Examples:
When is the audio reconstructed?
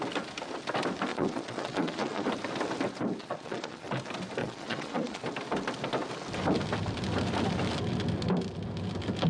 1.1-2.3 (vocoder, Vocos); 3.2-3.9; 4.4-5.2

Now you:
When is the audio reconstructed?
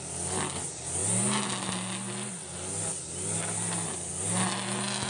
none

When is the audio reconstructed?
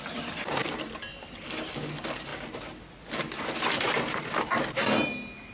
0.0-2.3 (vocoder, BigVGAN v2); 3.1-5.5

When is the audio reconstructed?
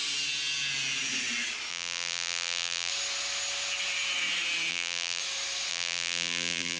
1.7-2.9 (vocoder, BigVGAN v2); 4.7-5.2; 5.7-6.8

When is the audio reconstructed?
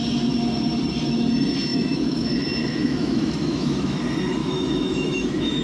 1.7-2.3 (autoencoder, DAC-VAE); 2.7-4.0; 4.4-5.6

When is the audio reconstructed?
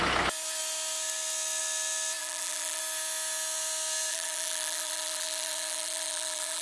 2.2-2.8 (vocoder, BigVGAN v2); 4.1-6.6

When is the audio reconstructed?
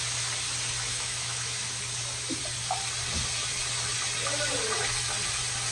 0.9-1.8 (autoencoder, DAC-VAE)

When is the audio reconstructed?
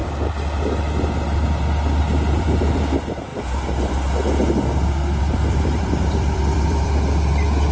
2.0-3.3 (vocoder, BigVGAN v2); 5.2-7.7